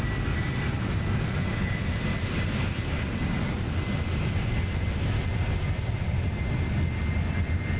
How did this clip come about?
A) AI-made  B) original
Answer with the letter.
B